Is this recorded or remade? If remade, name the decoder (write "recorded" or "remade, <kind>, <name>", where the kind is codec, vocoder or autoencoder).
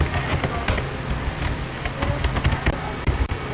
recorded